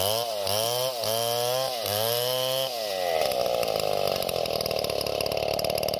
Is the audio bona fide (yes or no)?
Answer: yes